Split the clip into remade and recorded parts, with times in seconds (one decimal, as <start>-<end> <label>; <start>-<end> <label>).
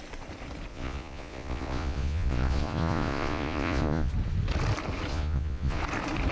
0.0-0.7 recorded; 0.7-4.1 remade; 4.1-5.1 recorded; 5.1-5.8 remade; 5.8-6.3 recorded